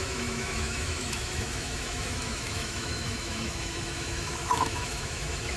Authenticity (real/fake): fake